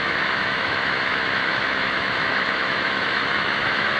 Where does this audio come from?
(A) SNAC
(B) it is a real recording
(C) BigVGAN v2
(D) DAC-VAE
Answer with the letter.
D